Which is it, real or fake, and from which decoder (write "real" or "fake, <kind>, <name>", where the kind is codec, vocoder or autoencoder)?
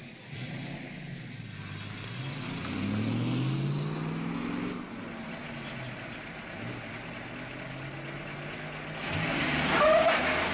real